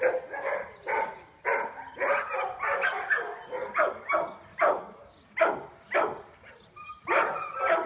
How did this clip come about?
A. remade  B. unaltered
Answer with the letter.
B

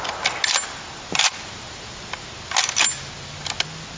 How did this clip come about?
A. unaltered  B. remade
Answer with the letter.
A